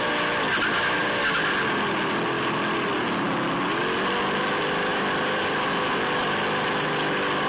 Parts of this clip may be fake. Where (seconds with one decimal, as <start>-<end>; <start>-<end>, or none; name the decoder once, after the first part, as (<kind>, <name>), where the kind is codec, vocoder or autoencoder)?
4.9-5.7 (vocoder, BigVGAN v2)